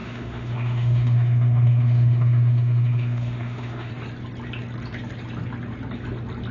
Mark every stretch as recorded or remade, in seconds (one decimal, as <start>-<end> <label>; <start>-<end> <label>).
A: 0.0-3.9 remade; 3.9-6.5 recorded